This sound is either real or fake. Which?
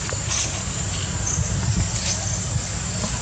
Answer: real